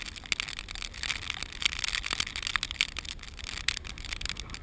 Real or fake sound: real